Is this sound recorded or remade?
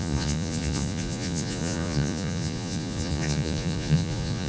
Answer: remade